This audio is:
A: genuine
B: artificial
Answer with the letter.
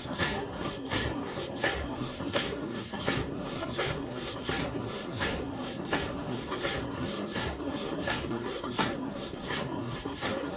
B